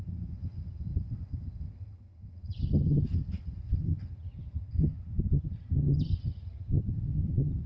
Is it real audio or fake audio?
fake